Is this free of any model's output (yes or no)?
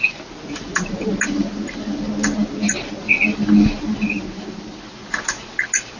yes